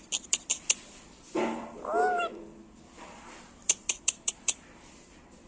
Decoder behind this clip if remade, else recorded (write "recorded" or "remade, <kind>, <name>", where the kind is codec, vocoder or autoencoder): remade, vocoder, BigVGAN v2